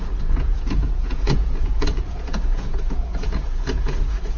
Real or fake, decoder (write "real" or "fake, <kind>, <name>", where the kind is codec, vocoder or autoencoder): fake, vocoder, Vocos